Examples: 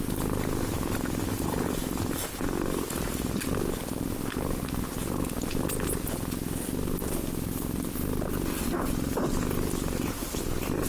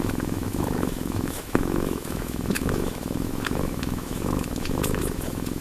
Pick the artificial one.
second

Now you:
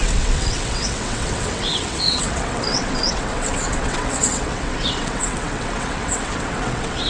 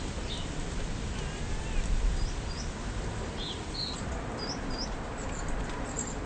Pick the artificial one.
first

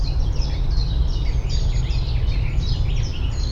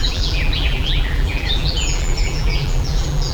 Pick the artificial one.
second